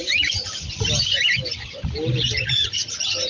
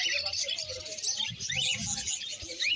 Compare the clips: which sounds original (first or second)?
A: second